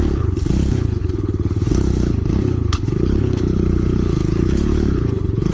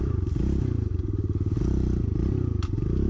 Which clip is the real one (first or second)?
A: second